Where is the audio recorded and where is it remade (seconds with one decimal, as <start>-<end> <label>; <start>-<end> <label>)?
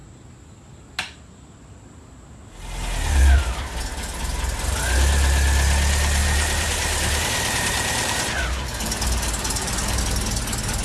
0.0-6.2 recorded; 6.2-10.0 remade; 10.0-10.8 recorded